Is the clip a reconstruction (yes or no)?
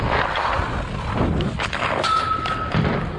no